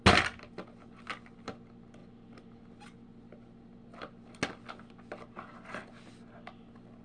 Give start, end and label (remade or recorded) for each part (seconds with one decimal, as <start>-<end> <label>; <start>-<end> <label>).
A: 0.0-7.0 recorded